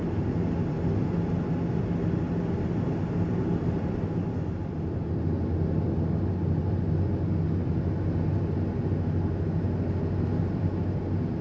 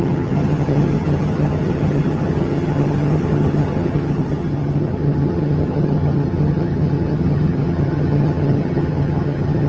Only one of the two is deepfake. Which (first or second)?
second